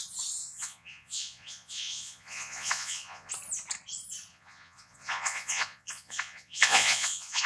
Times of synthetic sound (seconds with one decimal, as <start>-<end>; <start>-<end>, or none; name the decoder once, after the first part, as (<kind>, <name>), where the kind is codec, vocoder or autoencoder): 0.4-3.3 (vocoder, Vocos); 4.3-7.5